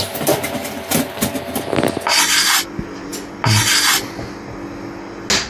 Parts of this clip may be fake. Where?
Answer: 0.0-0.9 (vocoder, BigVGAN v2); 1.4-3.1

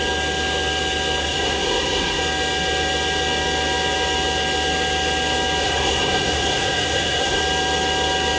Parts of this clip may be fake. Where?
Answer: 1.2-2.2 (codec, SNAC); 5.6-7.4

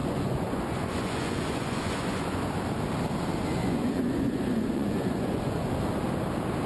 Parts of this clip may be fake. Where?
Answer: 0.0-2.5 (vocoder, Vocos); 3.6-5.7

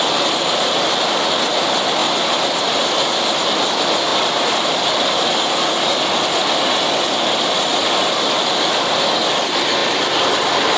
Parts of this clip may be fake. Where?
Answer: 2.0-2.6 (vocoder, BigVGAN v2); 4.1-5.5; 9.8-10.3

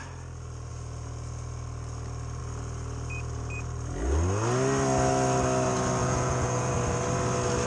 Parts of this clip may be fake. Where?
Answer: 6.0-6.7 (vocoder, Vocos)